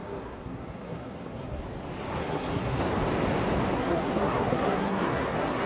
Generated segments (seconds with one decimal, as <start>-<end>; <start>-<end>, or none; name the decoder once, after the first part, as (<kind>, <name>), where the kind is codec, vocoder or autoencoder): 0.0-1.6 (codec, SNAC); 2.2-2.9; 3.7-5.7